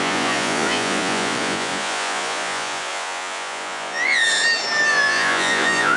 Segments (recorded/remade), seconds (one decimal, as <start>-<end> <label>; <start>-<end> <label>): 0.0-4.2 remade; 4.2-4.9 recorded; 4.9-6.0 remade